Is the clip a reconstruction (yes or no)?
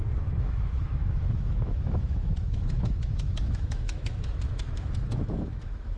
yes